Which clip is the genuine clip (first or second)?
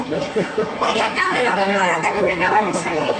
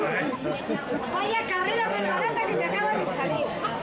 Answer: second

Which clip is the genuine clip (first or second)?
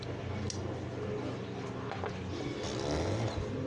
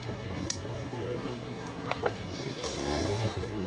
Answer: first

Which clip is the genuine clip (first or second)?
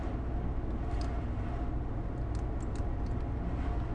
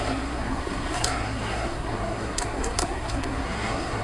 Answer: first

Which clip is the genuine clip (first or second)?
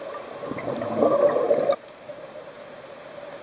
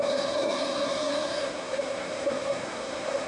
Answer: first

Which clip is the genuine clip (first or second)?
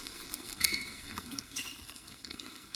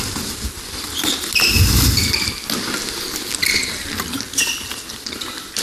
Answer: second